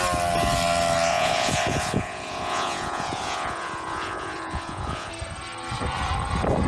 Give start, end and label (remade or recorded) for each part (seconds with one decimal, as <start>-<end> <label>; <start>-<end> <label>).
0.0-1.1 recorded; 1.1-5.1 remade; 5.1-6.7 recorded